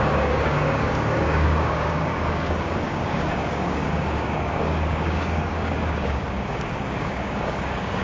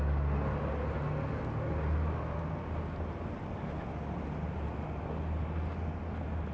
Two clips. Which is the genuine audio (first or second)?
second